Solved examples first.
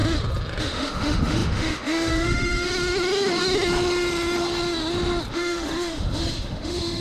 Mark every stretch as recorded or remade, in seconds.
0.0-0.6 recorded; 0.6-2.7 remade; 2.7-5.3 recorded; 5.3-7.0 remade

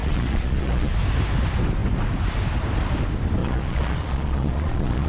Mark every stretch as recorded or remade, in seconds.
0.0-0.9 remade; 0.9-3.4 recorded; 3.4-5.1 remade

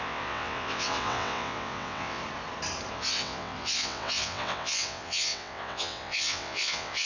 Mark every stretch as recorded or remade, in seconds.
0.0-2.2 remade; 2.2-2.9 recorded; 2.9-7.1 remade

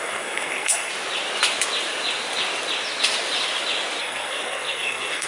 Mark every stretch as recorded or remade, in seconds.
0.0-0.9 remade; 0.9-4.0 recorded; 4.0-5.3 remade